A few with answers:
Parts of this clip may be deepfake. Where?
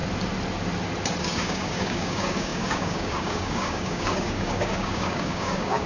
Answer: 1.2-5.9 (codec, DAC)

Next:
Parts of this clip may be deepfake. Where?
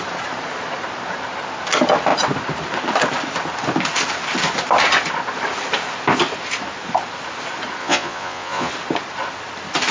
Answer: 7.8-8.7 (vocoder, Vocos)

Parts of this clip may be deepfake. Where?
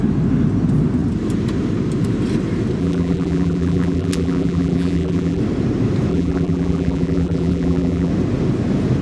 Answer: 2.8-5.4 (vocoder, BigVGAN v2); 6.1-8.1